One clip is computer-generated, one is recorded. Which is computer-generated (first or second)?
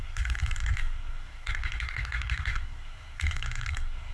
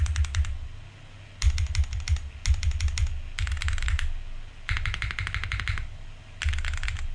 first